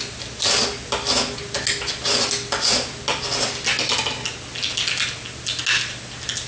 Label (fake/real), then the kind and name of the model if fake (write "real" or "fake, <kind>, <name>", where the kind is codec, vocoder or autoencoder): real